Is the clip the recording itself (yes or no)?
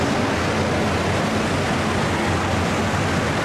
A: yes